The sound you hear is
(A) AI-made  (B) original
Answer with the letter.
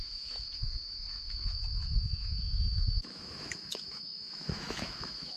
A